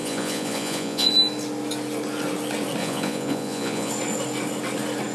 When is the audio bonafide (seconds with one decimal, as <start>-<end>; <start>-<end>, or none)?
1.1-2.8; 3.9-5.1